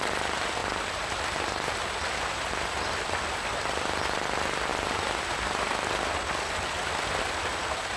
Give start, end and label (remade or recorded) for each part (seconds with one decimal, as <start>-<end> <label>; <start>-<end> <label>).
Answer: 0.0-8.0 recorded